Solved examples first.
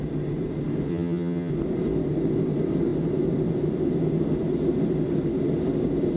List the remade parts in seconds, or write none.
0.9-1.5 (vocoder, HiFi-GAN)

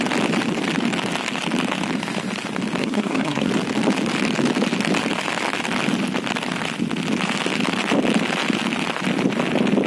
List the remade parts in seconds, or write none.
2.8-3.5 (codec, SNAC)

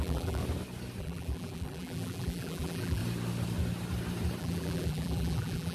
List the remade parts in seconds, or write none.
0.0-0.4 (vocoder, BigVGAN v2); 1.0-3.0; 4.4-5.7

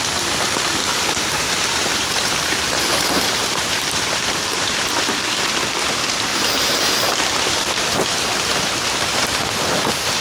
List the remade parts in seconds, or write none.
0.8-4.8 (vocoder, BigVGAN v2); 6.3-7.4; 8.5-9.4

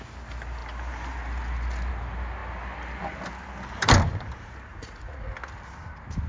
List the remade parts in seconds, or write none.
4.7-5.3 (vocoder, Vocos)